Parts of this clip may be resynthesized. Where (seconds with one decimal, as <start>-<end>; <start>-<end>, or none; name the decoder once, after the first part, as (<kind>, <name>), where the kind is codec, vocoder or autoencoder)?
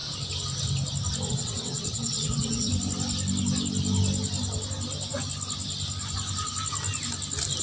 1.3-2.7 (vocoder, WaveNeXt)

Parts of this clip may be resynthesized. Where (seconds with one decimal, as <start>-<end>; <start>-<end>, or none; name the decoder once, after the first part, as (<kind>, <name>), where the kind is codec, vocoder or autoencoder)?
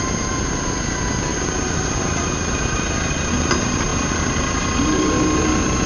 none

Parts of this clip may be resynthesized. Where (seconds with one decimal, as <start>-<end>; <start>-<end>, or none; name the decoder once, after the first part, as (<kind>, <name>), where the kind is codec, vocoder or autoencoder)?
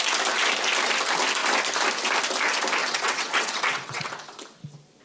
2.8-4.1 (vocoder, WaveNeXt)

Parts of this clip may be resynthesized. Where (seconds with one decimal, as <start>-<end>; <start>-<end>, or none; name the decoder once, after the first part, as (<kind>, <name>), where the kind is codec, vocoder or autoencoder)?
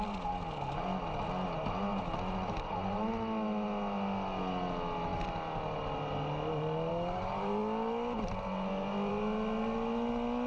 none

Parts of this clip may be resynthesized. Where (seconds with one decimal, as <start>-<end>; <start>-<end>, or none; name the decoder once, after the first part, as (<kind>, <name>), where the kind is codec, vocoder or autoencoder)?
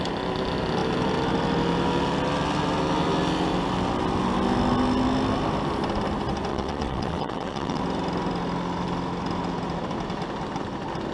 6.5-7.8 (vocoder, WaveNeXt)